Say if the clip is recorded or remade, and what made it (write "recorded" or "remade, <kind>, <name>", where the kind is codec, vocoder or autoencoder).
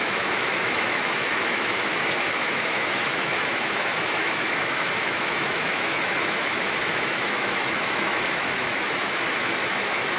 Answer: remade, autoencoder, DAC-VAE